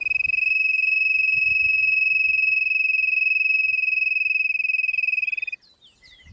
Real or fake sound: real